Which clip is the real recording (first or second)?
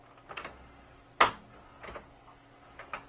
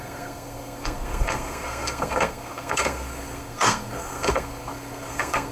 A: first